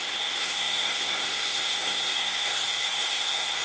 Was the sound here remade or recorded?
remade